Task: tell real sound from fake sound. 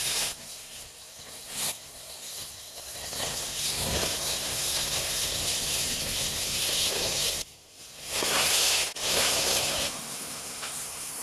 fake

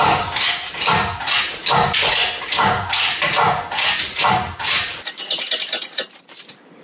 real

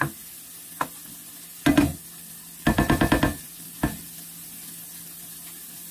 real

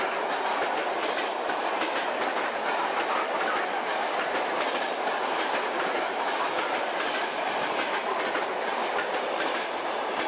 real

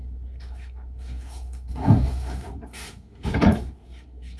fake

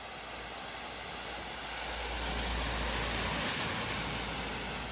real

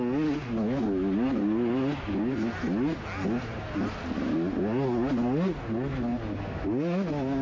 real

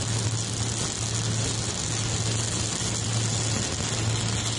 real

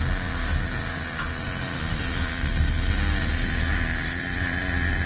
real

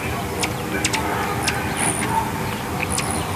real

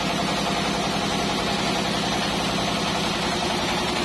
real